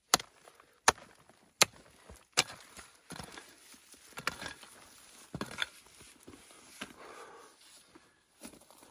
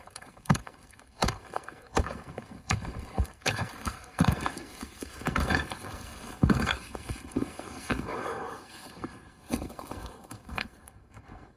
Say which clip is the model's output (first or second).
second